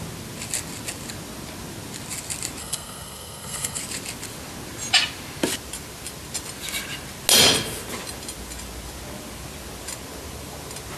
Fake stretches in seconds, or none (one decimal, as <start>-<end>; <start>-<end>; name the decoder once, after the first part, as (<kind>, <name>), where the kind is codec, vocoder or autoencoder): 2.6-3.8 (codec, SNAC)